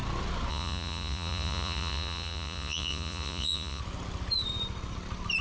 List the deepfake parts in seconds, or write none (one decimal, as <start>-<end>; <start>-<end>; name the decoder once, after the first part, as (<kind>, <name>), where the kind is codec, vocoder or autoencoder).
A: 0.5-3.8 (vocoder, Vocos)